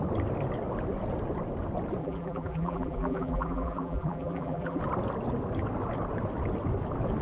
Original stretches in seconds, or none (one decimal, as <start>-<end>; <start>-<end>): 0.0-2.0; 4.8-7.2